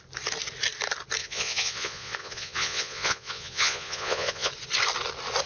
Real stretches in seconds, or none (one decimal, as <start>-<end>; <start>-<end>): 0.0-1.2; 4.5-5.5